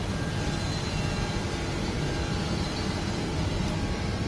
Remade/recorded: recorded